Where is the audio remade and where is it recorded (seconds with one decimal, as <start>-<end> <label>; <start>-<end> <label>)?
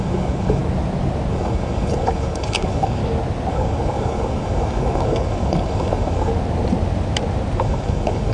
0.0-0.6 remade; 0.6-1.3 recorded; 1.3-3.0 remade; 3.0-3.5 recorded; 3.5-6.3 remade; 6.3-7.6 recorded; 7.6-8.3 remade